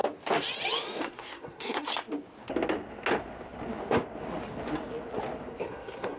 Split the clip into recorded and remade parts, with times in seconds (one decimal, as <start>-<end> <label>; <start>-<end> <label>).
0.0-1.0 recorded; 1.0-1.9 remade; 1.9-5.6 recorded; 5.6-6.2 remade